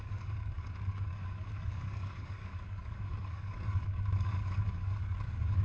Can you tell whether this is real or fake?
fake